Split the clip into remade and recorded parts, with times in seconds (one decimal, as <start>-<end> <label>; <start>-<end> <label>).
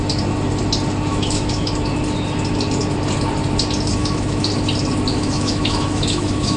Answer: 0.0-1.1 recorded; 1.1-1.7 remade; 1.7-4.0 recorded; 4.0-4.5 remade; 4.5-5.1 recorded; 5.1-6.6 remade